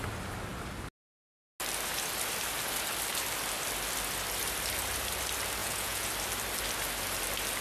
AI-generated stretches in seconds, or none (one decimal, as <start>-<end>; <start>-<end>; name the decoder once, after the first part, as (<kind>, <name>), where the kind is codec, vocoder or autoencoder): 5.6-6.1 (vocoder, Vocos)